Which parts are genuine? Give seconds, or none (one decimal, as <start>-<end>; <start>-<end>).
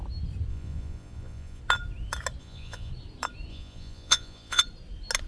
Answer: 0.0-0.5; 1.6-2.4; 2.9-3.5; 4.6-5.3